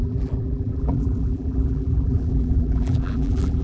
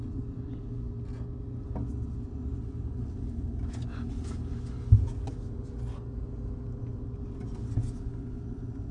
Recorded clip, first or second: second